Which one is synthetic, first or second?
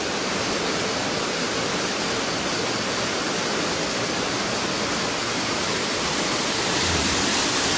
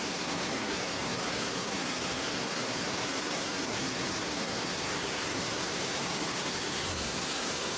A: second